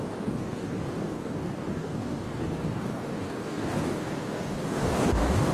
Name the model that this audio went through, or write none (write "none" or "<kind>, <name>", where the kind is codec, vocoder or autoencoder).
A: codec, DAC